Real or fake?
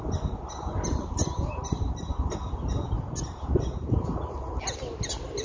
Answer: real